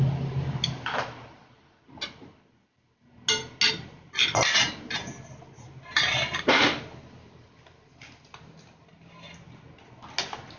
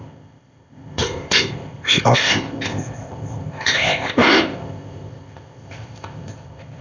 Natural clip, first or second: first